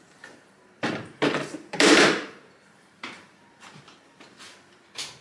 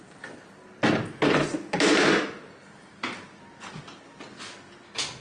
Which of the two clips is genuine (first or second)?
second